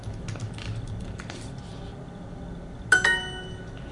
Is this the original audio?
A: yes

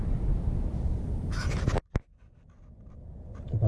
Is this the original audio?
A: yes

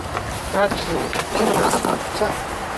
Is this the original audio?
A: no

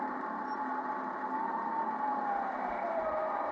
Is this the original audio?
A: no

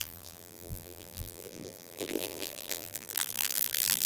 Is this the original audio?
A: no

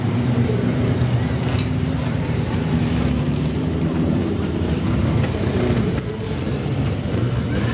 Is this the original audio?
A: no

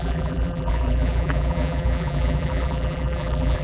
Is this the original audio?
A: no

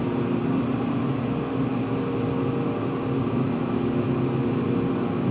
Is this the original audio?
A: yes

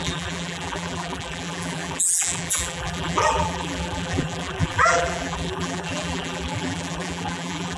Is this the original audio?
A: no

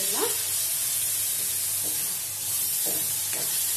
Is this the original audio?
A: yes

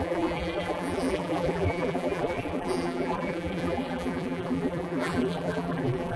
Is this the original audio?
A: no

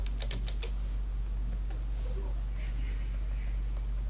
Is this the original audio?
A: yes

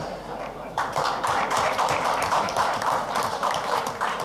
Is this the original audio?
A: no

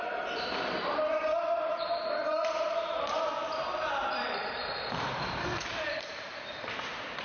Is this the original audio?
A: no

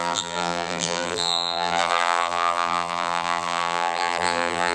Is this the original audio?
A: no